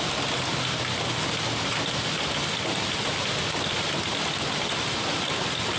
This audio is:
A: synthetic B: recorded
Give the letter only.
B